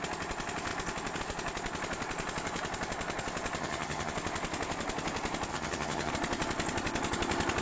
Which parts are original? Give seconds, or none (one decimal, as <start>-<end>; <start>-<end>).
0.0-3.6; 4.1-5.5; 6.1-7.6